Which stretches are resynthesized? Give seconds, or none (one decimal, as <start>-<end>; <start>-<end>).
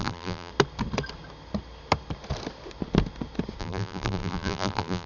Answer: 0.0-0.5; 3.6-5.1